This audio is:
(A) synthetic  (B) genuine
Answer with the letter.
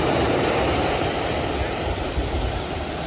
B